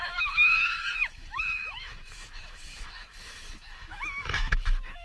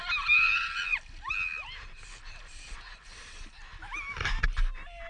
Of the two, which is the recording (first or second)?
second